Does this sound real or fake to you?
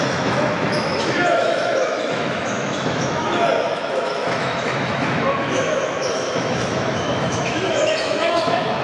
fake